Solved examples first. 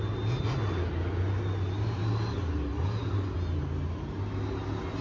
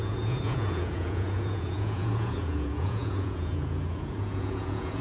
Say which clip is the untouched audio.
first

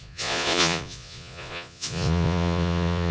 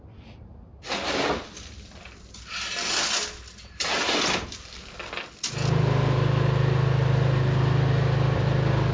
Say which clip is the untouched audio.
second